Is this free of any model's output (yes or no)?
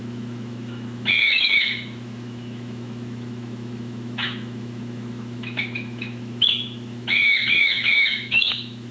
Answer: no